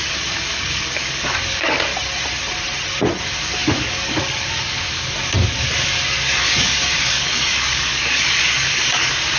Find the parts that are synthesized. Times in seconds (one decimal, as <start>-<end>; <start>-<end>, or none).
0.0-1.9; 3.2-9.4